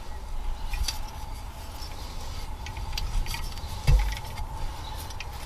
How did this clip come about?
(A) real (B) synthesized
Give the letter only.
A